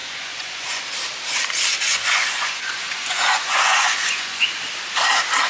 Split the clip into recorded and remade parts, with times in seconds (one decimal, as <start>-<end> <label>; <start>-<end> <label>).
0.0-0.8 remade; 0.8-1.9 recorded; 1.9-4.5 remade; 4.5-5.5 recorded